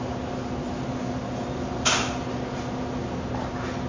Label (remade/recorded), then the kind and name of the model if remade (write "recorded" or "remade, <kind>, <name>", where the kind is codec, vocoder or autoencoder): recorded